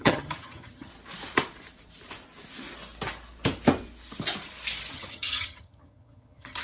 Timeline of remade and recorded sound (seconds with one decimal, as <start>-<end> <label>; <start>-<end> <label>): 0.0-0.9 remade; 0.9-4.9 recorded; 4.9-6.6 remade